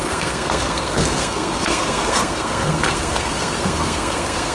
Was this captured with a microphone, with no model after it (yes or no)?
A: no